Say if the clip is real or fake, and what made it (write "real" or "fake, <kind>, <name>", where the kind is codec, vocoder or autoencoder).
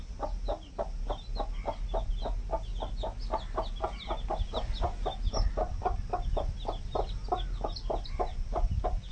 real